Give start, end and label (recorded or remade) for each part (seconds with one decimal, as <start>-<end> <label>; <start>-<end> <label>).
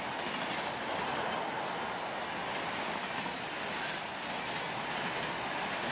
0.0-5.9 recorded